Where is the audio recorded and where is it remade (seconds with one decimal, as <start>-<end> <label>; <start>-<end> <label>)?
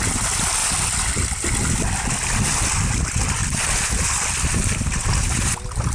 0.0-5.9 recorded